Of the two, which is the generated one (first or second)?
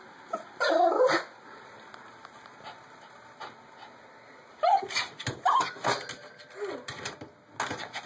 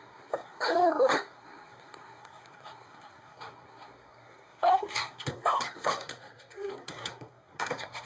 second